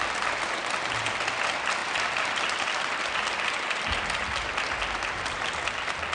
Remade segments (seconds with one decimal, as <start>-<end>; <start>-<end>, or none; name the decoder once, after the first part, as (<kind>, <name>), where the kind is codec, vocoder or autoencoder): none